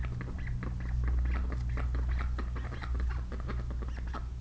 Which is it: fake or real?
real